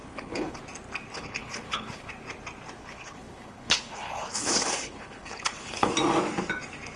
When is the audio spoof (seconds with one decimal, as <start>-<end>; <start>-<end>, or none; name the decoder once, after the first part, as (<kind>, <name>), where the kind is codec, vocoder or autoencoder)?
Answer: 0.0-0.6 (codec, HILCodec); 1.1-2.1; 2.8-5.9